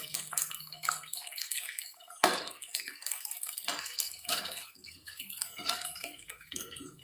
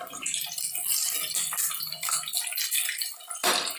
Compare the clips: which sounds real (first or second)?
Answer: second